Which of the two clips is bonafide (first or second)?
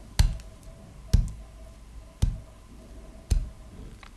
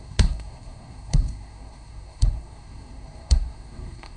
first